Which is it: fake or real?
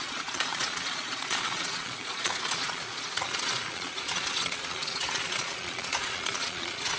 fake